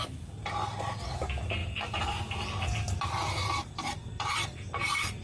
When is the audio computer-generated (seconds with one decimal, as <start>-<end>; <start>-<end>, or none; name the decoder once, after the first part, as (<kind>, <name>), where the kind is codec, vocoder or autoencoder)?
none